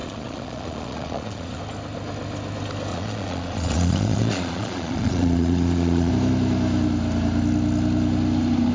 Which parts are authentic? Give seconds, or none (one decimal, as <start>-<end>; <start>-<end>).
1.6-2.9; 6.1-8.7